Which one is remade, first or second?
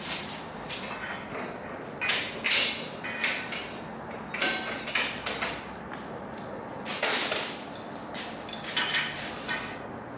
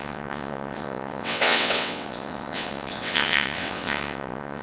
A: second